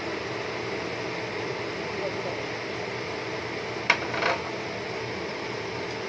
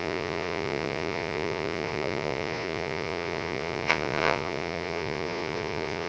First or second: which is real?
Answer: first